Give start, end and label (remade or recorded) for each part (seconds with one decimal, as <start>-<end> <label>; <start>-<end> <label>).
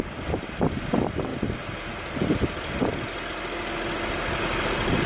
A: 0.0-5.1 recorded